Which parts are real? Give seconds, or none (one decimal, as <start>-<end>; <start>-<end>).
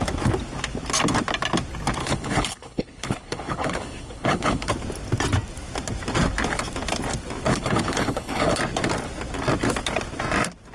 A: 0.0-2.0; 4.7-7.5; 8.6-10.7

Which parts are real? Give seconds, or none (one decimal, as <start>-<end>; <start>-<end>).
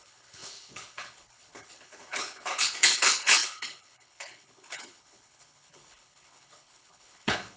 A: none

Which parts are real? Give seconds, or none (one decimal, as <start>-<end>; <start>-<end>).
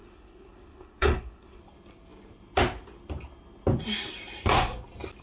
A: 1.6-5.2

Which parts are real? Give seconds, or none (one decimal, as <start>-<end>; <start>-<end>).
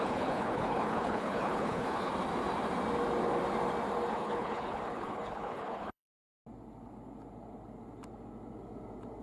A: 2.1-4.1; 6.1-9.2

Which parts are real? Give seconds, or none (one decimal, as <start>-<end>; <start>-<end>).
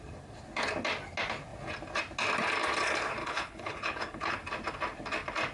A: 0.0-3.2; 4.3-5.5